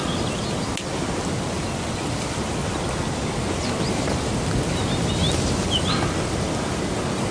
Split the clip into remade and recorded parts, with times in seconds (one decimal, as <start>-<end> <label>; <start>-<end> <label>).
0.0-7.3 recorded